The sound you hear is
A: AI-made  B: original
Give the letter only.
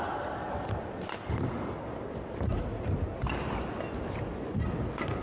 B